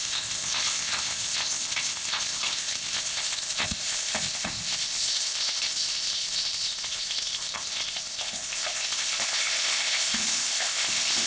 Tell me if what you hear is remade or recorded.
remade